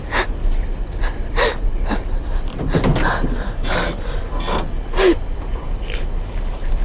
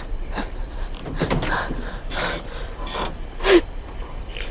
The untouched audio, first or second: first